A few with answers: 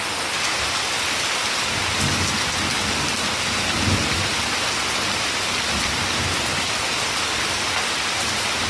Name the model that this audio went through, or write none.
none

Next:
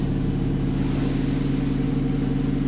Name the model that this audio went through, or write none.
none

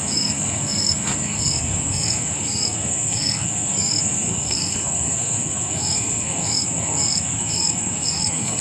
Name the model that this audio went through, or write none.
codec, SNAC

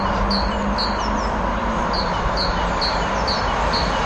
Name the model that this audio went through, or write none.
none